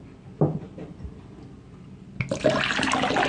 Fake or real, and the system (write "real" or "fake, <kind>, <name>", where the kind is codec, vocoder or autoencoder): real